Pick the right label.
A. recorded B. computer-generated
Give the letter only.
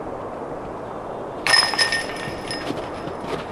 A